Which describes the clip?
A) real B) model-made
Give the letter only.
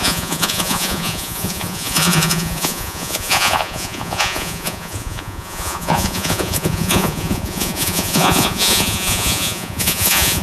B